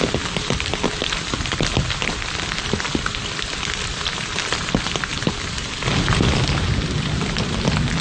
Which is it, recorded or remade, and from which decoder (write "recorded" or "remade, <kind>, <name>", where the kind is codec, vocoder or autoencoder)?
recorded